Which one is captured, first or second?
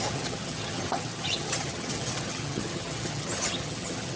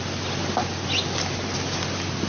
second